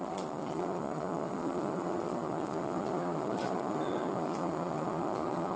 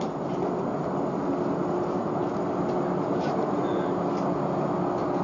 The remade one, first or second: first